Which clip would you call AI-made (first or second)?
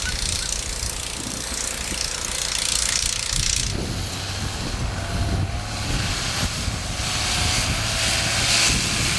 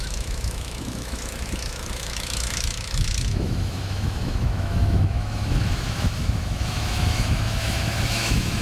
second